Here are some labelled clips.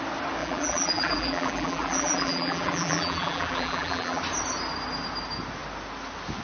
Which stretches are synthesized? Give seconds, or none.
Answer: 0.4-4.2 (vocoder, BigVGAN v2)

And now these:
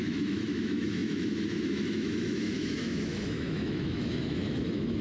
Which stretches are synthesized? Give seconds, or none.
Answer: 0.0-5.0 (autoencoder, DAC-VAE)

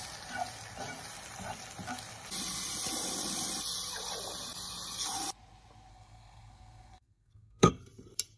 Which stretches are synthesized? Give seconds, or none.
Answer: 5.9-7.7 (codec, SNAC)

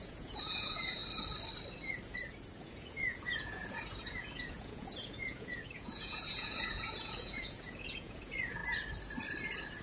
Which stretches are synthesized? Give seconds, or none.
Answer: 0.0-1.0 (vocoder, Vocos); 2.6-8.6

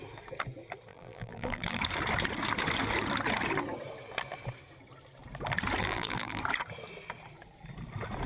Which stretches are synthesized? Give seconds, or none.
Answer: 0.9-1.8 (vocoder, BigVGAN v2); 5.8-6.4